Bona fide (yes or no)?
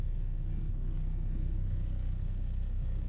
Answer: no